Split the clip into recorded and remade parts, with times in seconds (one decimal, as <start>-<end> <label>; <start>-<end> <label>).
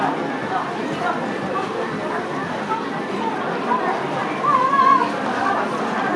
0.0-2.0 remade; 2.0-2.6 recorded; 2.6-6.2 remade